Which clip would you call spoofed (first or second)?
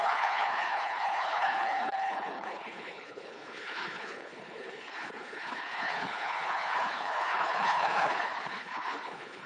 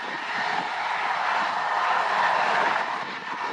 first